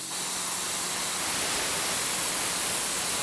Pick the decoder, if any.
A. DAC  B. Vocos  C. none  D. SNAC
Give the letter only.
C